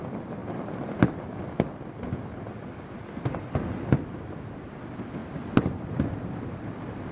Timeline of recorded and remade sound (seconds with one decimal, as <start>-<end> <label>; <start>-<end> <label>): 0.0-7.1 recorded